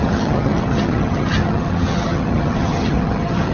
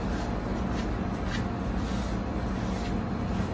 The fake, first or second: first